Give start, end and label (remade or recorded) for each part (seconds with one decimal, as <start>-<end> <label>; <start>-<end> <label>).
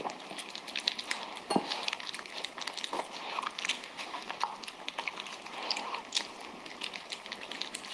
0.0-3.7 recorded; 3.7-4.3 remade; 4.3-7.9 recorded